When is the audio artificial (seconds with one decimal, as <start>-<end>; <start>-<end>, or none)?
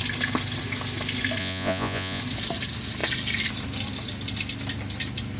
1.4-2.2